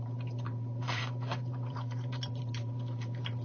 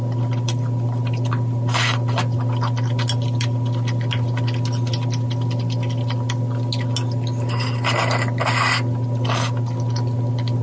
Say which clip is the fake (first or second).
first